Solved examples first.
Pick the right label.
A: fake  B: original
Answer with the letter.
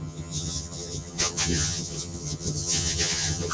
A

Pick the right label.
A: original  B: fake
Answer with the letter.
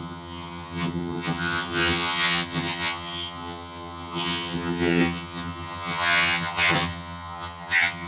B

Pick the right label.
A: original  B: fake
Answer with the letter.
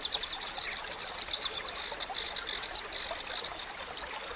A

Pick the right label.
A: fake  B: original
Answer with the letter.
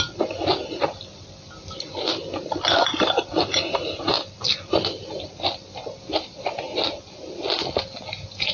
B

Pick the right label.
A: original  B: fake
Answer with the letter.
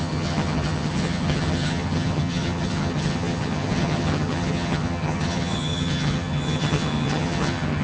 B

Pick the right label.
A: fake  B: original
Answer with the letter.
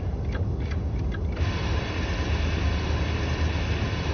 B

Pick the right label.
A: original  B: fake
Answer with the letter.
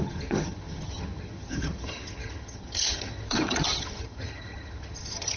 B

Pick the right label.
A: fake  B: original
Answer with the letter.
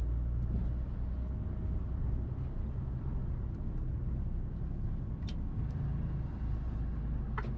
B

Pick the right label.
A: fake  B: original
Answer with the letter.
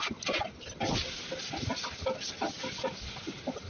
B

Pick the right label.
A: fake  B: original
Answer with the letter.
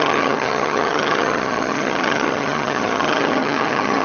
A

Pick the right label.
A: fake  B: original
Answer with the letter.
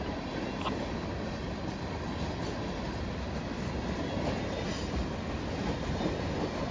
B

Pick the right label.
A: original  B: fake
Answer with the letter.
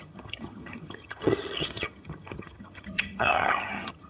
B